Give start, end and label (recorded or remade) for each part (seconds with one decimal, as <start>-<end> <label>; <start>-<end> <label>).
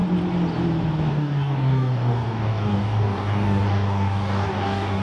0.0-1.1 recorded; 1.1-5.0 remade